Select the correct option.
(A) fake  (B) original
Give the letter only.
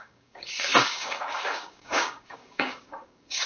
A